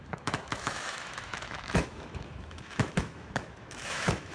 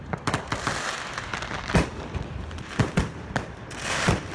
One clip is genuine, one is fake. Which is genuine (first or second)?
second